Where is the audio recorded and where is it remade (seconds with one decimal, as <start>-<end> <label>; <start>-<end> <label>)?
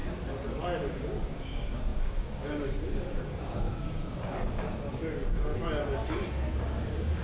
0.0-0.6 recorded; 0.6-4.0 remade; 4.0-4.9 recorded; 4.9-5.5 remade; 5.5-6.5 recorded; 6.5-7.2 remade